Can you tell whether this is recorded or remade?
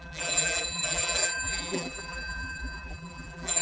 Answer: remade